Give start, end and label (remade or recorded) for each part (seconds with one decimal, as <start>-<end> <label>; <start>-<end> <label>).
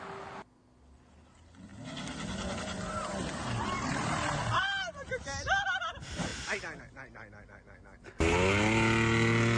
0.0-9.6 recorded